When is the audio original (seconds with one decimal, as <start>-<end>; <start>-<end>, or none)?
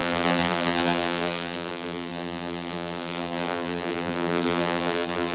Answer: none